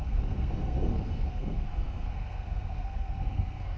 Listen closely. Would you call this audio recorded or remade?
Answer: remade